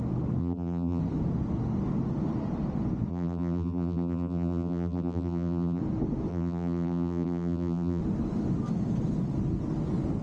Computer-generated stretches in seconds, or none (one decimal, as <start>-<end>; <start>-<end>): 0.4-1.0; 3.1-5.8; 6.3-8.0